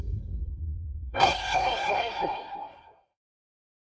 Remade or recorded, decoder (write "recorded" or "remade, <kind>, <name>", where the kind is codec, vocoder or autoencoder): remade, codec, SNAC